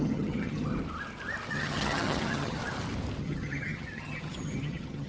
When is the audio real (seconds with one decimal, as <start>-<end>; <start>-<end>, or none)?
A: 0.7-1.5; 2.6-3.2